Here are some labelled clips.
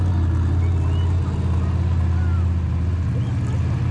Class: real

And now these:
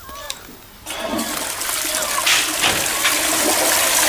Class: real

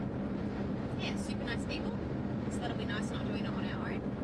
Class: real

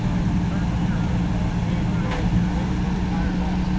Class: real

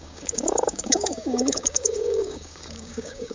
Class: fake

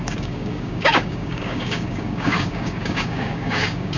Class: fake